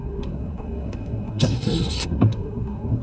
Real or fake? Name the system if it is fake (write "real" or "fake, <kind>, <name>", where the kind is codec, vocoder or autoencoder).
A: fake, codec, SNAC